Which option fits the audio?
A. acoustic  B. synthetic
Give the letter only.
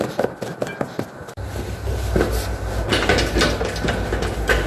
A